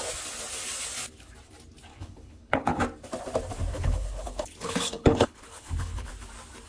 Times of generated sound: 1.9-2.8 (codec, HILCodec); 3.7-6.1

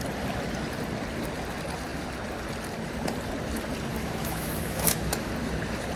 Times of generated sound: 3.9-5.3 (autoencoder, DAC-VAE)

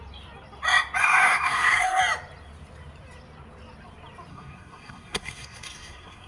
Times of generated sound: 1.0-2.0 (codec, SNAC); 4.3-6.3

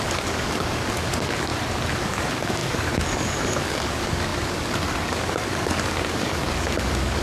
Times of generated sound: 0.0-1.5 (codec, DAC); 2.0-7.2

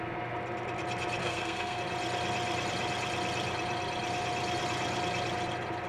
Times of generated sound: 1.2-1.8 (codec, SNAC)

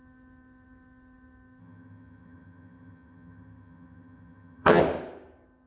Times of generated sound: 1.6-4.8 (vocoder, HiFi-GAN)

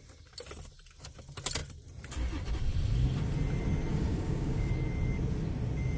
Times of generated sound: 3.9-4.7 (codec, DAC)

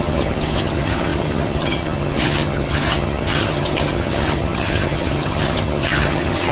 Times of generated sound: 0.0-6.5 (vocoder, HiFi-GAN)